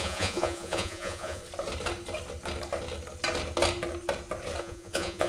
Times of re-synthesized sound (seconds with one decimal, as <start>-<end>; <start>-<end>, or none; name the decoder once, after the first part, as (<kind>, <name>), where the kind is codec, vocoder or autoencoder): 0.0-1.4 (vocoder, Vocos); 4.6-5.3